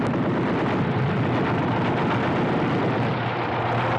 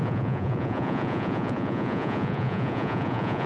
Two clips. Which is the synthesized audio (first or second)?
second